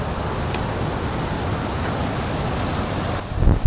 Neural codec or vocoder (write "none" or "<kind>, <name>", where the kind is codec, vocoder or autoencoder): none